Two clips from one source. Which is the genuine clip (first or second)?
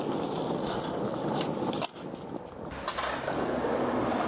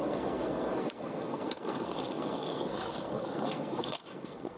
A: first